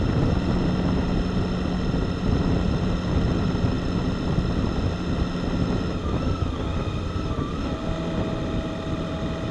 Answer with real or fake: real